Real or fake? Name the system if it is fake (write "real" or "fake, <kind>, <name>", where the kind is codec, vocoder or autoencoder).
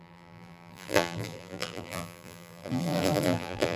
fake, vocoder, BigVGAN v2